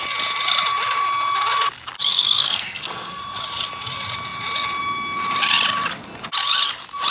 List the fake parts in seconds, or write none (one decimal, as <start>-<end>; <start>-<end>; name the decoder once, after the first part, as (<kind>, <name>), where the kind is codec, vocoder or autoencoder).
2.1-3.2 (codec, SNAC)